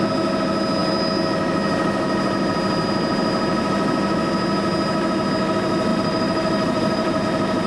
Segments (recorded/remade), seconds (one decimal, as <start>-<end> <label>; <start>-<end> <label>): 0.0-5.9 recorded; 5.9-7.2 remade; 7.2-7.7 recorded